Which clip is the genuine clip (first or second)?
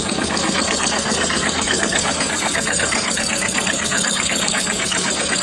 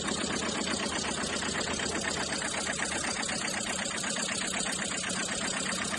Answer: second